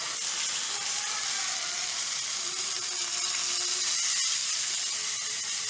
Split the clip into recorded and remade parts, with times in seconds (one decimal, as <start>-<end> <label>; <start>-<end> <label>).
0.0-1.8 recorded; 1.8-2.9 remade; 2.9-4.4 recorded; 4.4-5.7 remade